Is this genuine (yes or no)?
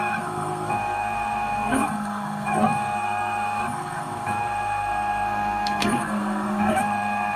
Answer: no